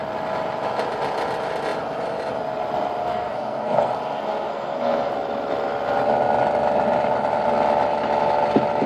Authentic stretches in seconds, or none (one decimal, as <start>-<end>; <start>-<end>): 0.0-3.0; 5.1-8.9